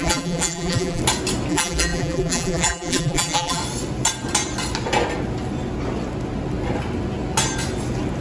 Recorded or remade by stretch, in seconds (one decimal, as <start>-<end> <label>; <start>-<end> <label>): 0.0-1.0 remade; 1.0-1.5 recorded; 1.5-3.6 remade; 3.6-8.2 recorded